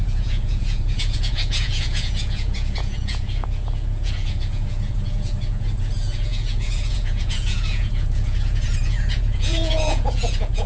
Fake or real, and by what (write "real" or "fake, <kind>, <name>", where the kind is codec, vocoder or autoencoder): fake, vocoder, Vocos